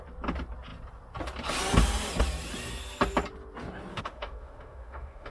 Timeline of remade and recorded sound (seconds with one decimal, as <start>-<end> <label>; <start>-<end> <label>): 0.0-3.9 recorded; 3.9-5.3 remade